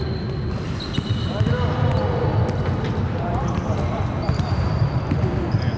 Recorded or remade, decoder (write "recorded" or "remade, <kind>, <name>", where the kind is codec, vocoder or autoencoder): recorded